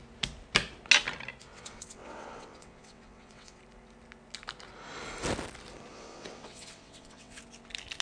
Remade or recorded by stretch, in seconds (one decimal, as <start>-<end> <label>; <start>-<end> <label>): 0.0-1.4 recorded; 1.4-3.6 remade; 3.6-5.9 recorded; 5.9-7.4 remade; 7.4-8.0 recorded